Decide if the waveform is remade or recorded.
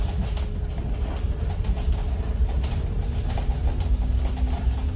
recorded